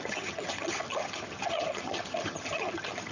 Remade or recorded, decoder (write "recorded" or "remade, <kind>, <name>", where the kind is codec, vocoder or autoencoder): remade, vocoder, HiFi-GAN